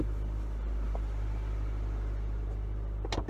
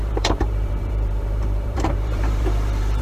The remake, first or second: second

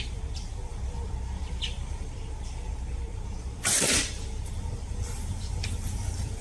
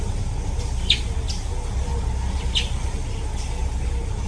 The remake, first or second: first